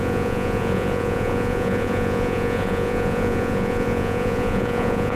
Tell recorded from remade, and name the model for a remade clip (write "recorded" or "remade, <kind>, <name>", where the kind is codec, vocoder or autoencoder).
remade, vocoder, Vocos